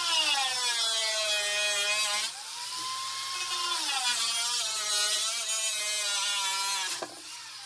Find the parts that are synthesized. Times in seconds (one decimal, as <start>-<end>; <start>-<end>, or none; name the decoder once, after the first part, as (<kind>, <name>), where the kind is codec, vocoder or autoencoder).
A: none